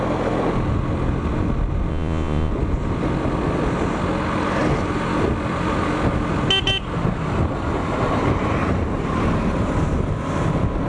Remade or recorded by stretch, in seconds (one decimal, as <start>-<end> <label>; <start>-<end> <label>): 0.0-1.9 recorded; 1.9-2.5 remade; 2.5-10.9 recorded